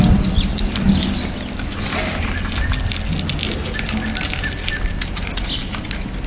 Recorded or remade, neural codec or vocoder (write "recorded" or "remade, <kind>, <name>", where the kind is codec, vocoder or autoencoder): recorded